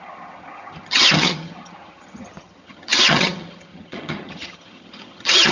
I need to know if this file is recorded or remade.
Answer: remade